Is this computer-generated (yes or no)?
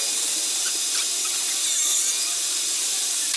no